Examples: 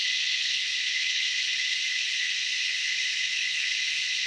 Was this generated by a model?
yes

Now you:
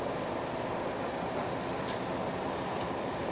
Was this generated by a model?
no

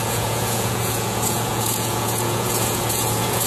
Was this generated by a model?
yes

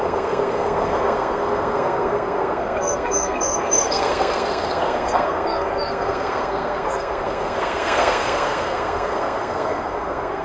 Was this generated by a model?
yes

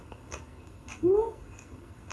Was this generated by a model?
yes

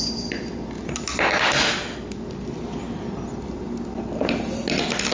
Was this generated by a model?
no